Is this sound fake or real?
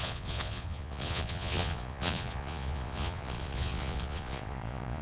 fake